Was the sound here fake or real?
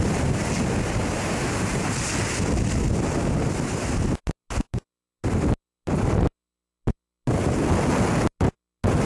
real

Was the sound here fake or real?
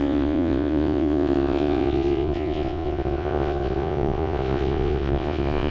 fake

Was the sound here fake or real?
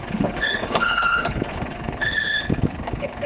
fake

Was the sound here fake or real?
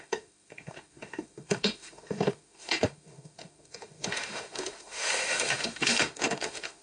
fake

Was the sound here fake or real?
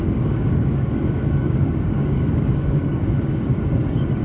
fake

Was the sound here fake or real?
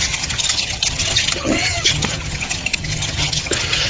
fake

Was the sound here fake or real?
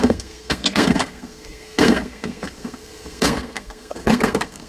fake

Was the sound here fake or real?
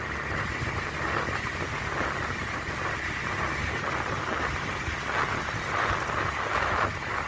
real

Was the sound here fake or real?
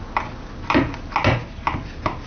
real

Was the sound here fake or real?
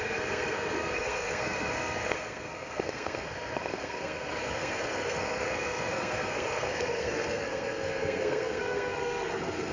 fake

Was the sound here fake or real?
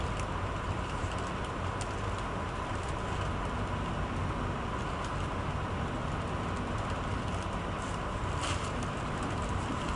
real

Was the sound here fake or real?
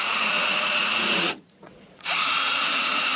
fake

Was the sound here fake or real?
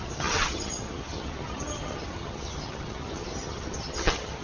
fake